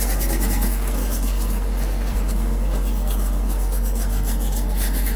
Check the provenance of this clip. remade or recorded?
remade